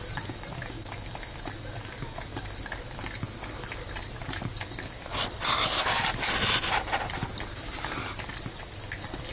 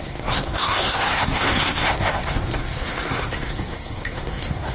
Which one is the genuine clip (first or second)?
first